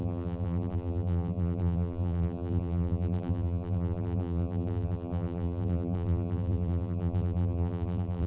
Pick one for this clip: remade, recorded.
remade